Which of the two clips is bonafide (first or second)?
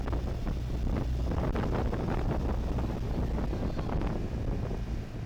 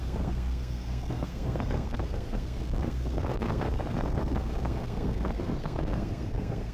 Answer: first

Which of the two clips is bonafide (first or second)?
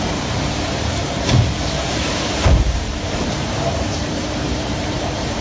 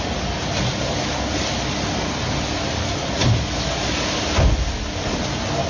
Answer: second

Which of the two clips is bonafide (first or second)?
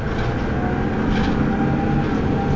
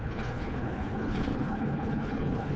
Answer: first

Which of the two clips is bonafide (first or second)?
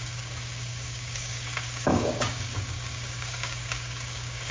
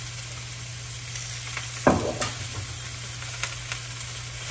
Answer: second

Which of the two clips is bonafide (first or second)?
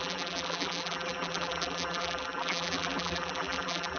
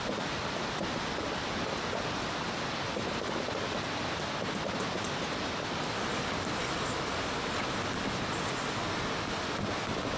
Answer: second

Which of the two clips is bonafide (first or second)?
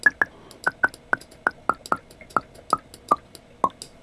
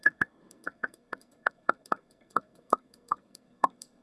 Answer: first